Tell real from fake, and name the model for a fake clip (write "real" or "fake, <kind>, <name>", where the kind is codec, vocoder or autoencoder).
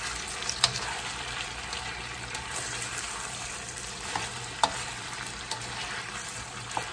fake, vocoder, BigVGAN v2